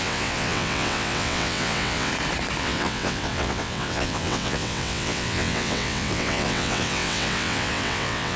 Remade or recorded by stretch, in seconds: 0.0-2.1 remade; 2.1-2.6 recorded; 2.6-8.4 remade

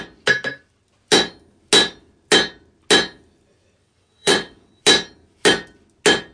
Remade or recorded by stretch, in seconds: 0.0-3.8 recorded; 3.8-4.8 remade; 4.8-6.3 recorded

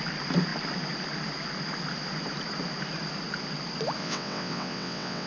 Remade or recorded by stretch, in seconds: 0.0-4.0 recorded; 4.0-5.3 remade